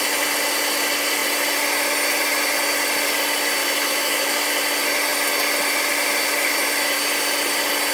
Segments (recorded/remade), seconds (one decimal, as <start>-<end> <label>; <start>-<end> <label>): 0.0-3.6 recorded; 3.6-4.4 remade; 4.4-7.9 recorded

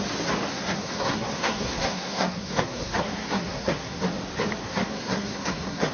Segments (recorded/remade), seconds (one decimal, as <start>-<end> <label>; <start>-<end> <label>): 0.0-0.5 recorded; 0.5-4.0 remade; 4.0-4.6 recorded; 4.6-5.9 remade

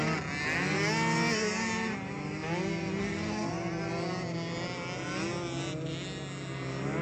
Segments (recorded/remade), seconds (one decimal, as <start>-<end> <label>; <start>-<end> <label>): 0.0-3.0 recorded; 3.0-3.5 remade; 3.5-7.0 recorded